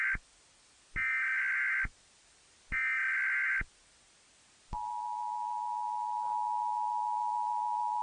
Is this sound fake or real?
real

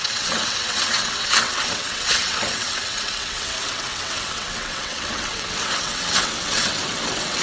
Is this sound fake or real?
fake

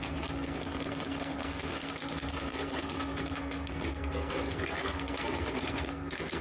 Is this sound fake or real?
fake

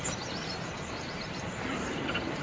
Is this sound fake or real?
fake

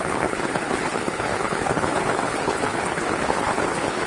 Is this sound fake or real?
fake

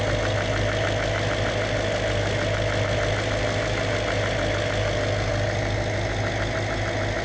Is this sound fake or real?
real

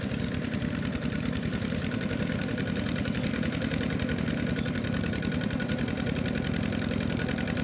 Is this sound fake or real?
fake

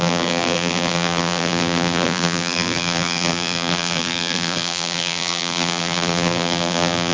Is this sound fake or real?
fake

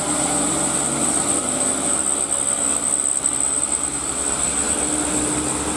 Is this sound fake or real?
real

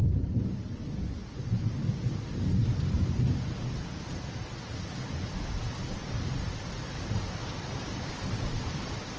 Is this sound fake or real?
real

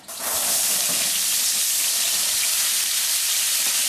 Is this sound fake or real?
fake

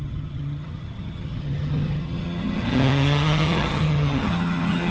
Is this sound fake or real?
fake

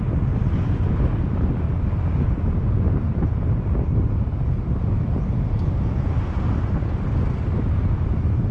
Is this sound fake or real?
real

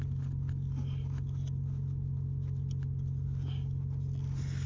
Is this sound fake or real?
real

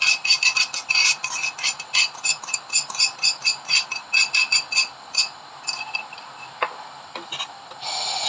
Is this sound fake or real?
real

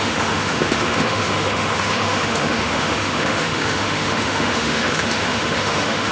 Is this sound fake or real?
fake